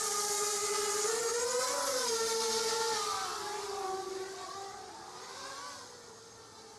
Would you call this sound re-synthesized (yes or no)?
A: no